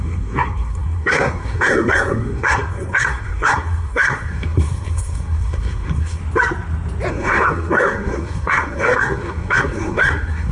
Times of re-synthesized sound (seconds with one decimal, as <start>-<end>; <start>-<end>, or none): 0.0-6.2; 7.1-10.5

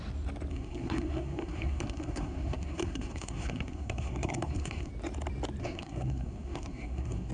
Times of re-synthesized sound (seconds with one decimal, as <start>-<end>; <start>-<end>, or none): 0.5-4.9; 5.6-7.3

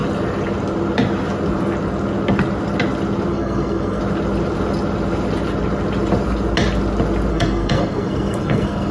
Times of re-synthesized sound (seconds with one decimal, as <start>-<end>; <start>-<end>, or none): 3.3-4.0; 7.3-8.9

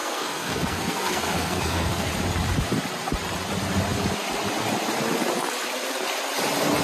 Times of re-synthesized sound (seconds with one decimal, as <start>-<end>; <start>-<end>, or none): 0.0-2.1